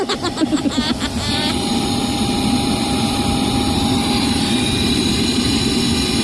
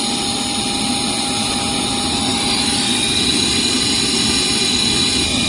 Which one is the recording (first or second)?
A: second